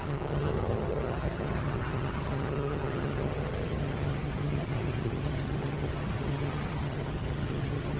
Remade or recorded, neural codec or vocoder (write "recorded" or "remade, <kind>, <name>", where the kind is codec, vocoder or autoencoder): remade, vocoder, HiFi-GAN